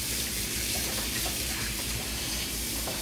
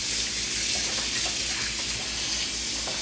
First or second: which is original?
second